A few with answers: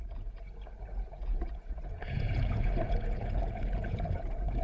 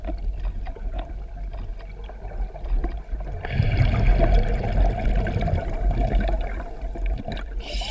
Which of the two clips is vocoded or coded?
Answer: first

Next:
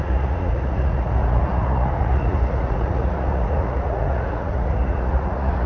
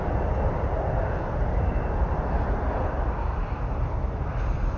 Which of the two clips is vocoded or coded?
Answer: first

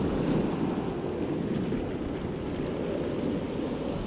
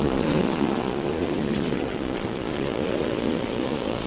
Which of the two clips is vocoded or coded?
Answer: second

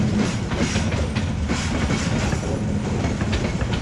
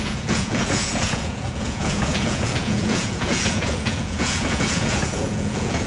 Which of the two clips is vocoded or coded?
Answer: second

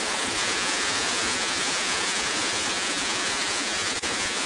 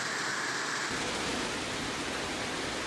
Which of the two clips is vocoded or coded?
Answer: first